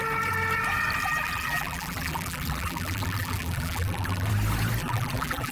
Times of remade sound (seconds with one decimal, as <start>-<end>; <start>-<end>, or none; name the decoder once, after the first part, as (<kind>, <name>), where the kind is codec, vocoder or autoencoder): 1.0-4.3 (vocoder, BigVGAN v2); 4.8-5.5